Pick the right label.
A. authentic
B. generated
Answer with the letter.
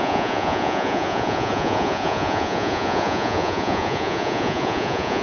B